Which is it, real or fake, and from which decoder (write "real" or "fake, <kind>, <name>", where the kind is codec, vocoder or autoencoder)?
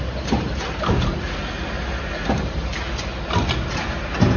real